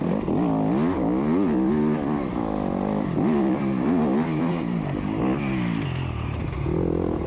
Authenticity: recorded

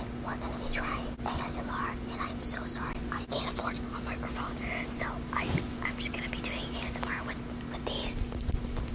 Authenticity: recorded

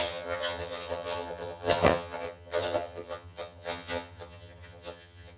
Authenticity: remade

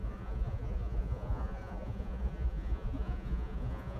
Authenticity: remade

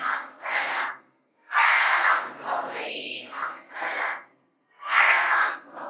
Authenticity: remade